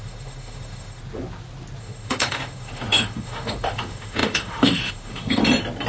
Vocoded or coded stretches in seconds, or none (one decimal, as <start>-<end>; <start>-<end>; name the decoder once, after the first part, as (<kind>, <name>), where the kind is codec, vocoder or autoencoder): 0.0-1.0 (autoencoder, DAC-VAE); 1.8-5.4